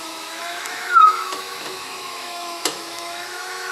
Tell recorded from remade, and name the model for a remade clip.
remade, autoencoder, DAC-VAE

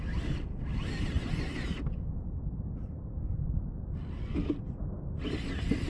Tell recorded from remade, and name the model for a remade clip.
recorded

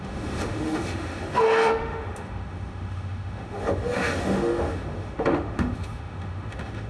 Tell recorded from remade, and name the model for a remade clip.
remade, autoencoder, DAC-VAE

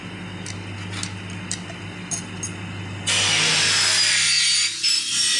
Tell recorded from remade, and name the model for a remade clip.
recorded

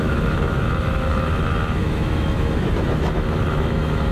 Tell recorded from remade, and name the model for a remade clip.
remade, autoencoder, DAC-VAE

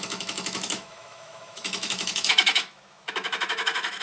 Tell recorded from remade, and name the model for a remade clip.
remade, autoencoder, DAC-VAE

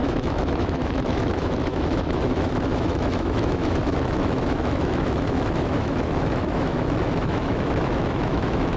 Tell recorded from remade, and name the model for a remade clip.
remade, autoencoder, DAC-VAE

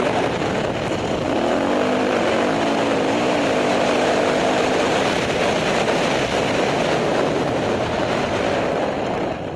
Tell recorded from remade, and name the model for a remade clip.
recorded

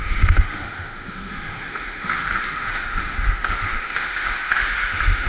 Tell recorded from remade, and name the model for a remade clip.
remade, autoencoder, DAC-VAE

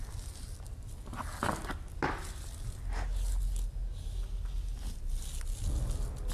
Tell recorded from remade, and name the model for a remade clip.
recorded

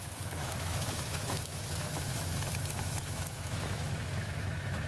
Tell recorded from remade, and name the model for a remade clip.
remade, autoencoder, DAC-VAE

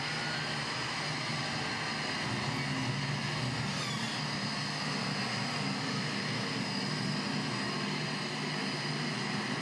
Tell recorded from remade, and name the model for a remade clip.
recorded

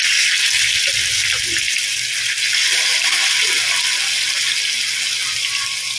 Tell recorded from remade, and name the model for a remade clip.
recorded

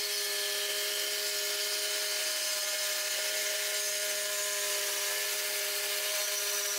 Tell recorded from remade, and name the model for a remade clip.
recorded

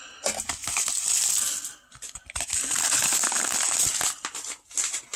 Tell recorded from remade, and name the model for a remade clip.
recorded